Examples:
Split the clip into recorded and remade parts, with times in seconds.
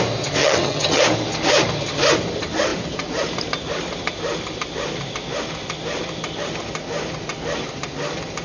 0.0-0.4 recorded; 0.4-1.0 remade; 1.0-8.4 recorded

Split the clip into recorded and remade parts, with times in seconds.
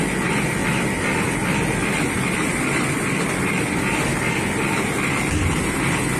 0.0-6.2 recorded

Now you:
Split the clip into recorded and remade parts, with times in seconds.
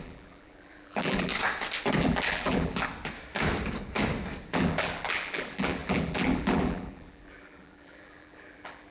0.0-1.3 remade; 1.3-2.0 recorded; 2.0-2.9 remade; 2.9-4.5 recorded; 4.5-8.9 remade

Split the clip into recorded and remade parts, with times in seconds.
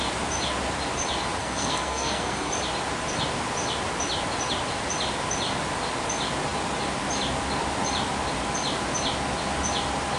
0.0-1.4 recorded; 1.4-2.5 remade; 2.5-10.2 recorded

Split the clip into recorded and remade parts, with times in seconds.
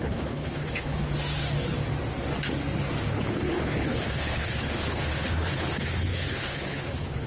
0.0-1.0 remade; 1.0-3.1 recorded; 3.1-7.3 remade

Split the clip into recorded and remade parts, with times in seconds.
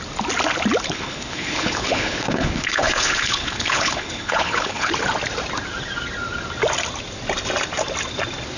0.0-0.9 recorded; 0.9-4.9 remade; 4.9-8.6 recorded